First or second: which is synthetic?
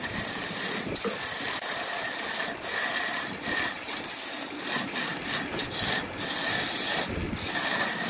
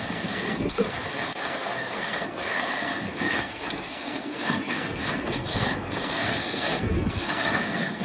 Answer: second